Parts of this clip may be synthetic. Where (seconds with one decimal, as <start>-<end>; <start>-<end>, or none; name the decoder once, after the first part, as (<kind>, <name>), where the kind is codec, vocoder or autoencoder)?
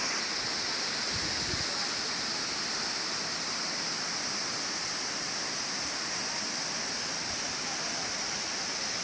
none